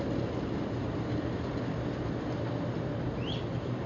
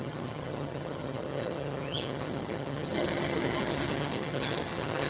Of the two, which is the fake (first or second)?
second